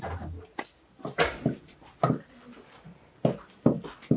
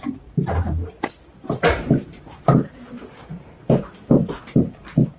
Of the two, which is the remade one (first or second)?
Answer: second